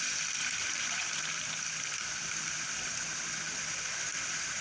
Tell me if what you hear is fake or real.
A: real